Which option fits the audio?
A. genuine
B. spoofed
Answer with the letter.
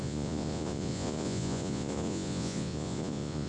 B